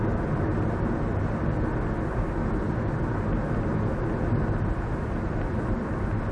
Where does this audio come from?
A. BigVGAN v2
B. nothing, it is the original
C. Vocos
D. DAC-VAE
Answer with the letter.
B